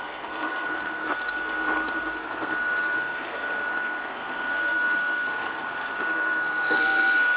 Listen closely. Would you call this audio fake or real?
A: fake